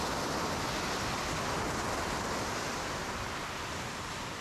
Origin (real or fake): real